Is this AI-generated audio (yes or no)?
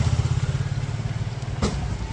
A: no